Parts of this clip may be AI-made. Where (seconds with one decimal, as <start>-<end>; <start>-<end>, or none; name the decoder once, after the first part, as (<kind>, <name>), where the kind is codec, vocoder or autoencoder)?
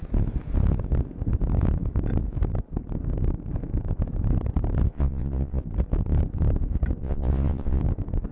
4.9-5.6 (vocoder, Vocos); 7.0-7.8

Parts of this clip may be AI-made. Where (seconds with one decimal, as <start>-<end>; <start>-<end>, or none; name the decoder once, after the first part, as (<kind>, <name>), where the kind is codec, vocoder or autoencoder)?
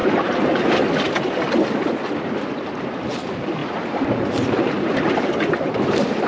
2.4-3.6 (vocoder, BigVGAN v2); 4.1-6.3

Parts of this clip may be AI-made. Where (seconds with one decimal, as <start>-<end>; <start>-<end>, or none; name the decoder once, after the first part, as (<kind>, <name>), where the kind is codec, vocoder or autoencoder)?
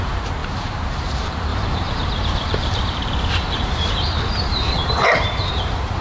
0.0-6.0 (vocoder, BigVGAN v2)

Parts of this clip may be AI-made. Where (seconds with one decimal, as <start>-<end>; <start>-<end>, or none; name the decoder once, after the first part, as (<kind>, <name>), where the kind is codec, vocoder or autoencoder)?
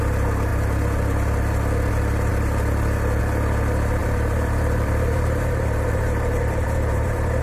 4.0-7.4 (vocoder, BigVGAN v2)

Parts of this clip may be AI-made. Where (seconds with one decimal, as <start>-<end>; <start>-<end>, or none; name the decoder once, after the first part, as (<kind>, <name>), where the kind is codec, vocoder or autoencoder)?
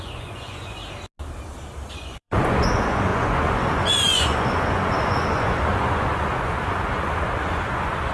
0.0-0.8 (vocoder, Vocos); 1.9-8.1